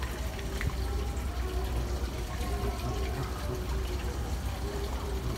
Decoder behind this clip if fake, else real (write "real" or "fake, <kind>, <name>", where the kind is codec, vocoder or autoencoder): real